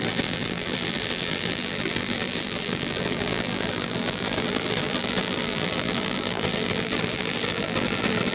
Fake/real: fake